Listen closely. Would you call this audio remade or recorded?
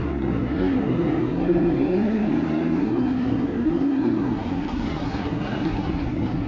remade